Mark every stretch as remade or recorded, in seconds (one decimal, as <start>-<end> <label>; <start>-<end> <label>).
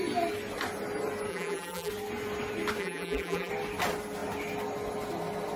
0.0-1.3 recorded; 1.3-1.9 remade; 1.9-2.8 recorded; 2.8-3.5 remade; 3.5-5.6 recorded